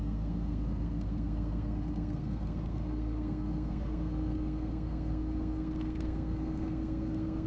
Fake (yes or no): yes